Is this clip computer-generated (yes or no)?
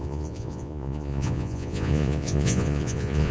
yes